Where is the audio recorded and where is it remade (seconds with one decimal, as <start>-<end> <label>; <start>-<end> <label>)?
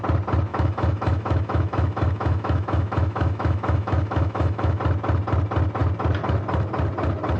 0.0-0.5 recorded; 0.5-4.8 remade; 4.8-7.4 recorded